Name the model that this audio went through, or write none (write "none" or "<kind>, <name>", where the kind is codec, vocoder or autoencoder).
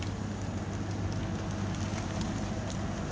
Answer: none